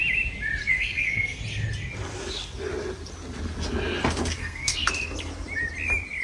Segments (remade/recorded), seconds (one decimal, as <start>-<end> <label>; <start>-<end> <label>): 0.0-0.6 recorded; 0.6-1.4 remade; 1.4-4.4 recorded; 4.4-4.9 remade; 4.9-6.2 recorded